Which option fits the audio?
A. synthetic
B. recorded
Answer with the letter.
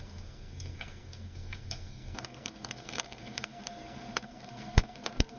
A